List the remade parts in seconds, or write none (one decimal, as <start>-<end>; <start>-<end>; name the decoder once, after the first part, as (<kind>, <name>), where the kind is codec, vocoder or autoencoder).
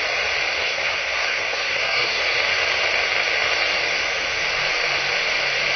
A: 0.6-2.2 (codec, SNAC)